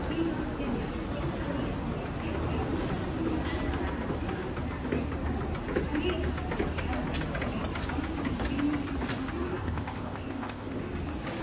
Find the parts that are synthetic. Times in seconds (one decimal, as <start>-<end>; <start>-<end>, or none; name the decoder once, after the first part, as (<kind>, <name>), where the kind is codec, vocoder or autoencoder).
9.6-10.8 (codec, ZipCodec)